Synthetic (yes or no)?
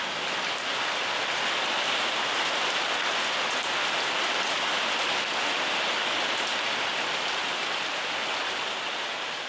no